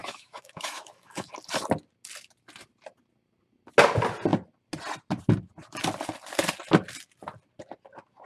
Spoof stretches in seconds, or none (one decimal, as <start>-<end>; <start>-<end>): 0.0-1.3